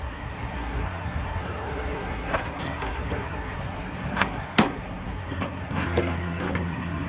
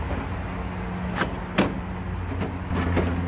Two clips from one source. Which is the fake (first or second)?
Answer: first